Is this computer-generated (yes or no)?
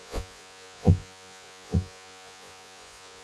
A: yes